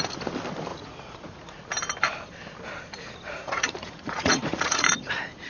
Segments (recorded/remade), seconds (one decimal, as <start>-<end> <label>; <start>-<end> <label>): 0.0-0.7 recorded; 0.7-1.6 remade; 1.6-3.3 recorded; 3.3-5.1 remade; 5.1-5.5 recorded